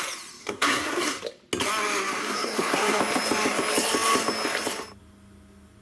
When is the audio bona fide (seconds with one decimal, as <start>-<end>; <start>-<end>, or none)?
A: 0.0-0.4; 1.2-2.2; 3.0-5.8